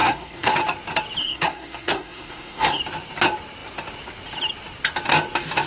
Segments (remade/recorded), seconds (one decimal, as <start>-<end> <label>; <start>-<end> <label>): 0.0-0.5 remade; 0.5-1.2 recorded; 1.2-2.8 remade; 2.8-5.7 recorded